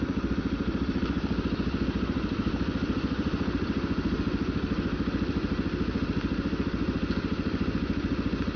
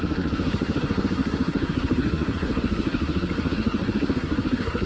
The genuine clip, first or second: first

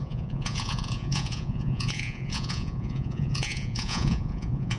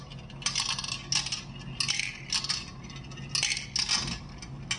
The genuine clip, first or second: second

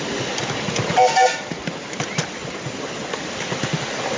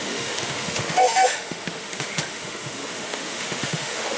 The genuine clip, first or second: first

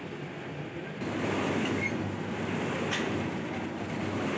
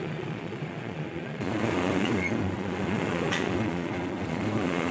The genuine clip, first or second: first